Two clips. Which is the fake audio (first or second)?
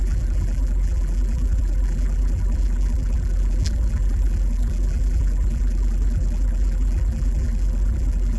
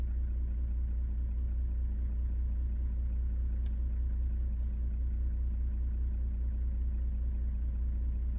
first